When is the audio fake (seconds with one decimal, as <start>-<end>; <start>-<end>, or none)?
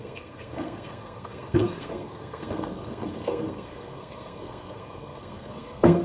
0.0-6.0